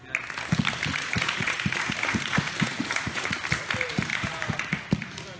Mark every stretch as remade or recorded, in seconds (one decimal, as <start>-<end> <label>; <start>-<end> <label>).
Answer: 0.0-0.9 recorded; 0.9-3.4 remade; 3.4-4.1 recorded; 4.1-4.8 remade; 4.8-5.4 recorded